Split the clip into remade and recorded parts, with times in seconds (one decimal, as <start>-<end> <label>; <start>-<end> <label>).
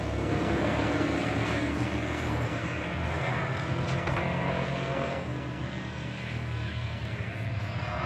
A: 0.0-8.1 remade